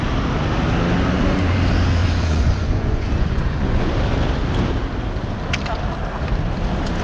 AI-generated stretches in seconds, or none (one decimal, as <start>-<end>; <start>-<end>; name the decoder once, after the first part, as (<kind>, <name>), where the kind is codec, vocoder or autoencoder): 2.0-3.9 (vocoder, Vocos)